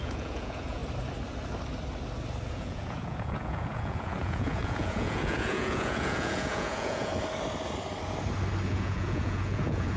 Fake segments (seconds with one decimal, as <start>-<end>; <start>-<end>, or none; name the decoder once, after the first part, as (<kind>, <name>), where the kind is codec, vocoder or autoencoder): 0.0-0.8 (vocoder, Vocos); 2.5-7.1; 8.7-10.0